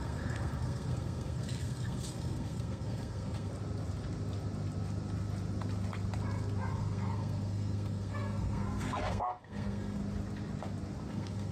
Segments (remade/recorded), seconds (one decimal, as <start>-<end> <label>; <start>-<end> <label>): 0.0-3.5 remade; 3.5-6.7 recorded; 6.7-10.0 remade; 10.0-11.1 recorded; 11.1-11.5 remade